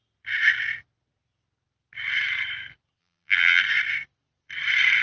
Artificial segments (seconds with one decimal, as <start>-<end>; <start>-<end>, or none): 3.0-3.6